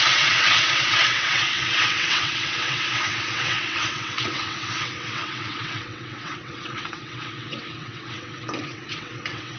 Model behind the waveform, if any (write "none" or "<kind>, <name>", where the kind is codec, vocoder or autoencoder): vocoder, WaveNeXt